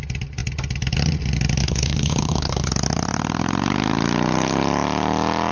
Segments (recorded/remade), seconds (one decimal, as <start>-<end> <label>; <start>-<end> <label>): 0.0-1.6 recorded; 1.6-2.7 remade; 2.7-5.5 recorded